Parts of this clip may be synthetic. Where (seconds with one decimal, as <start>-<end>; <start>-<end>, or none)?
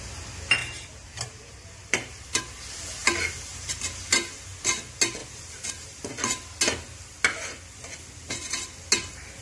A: 0.6-2.4; 3.0-3.7; 5.2-6.1